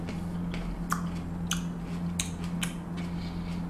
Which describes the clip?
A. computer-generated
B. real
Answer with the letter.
B